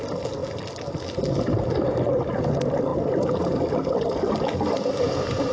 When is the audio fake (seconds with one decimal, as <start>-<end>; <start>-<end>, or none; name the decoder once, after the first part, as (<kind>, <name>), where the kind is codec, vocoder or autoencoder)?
none